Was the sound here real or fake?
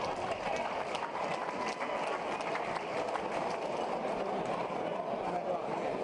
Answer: real